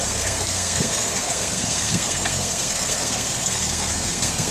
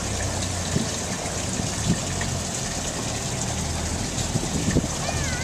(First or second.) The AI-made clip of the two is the first